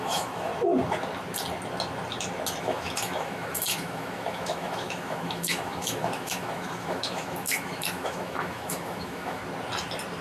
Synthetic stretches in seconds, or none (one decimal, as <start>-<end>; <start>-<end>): 0.0-0.5; 2.6-9.4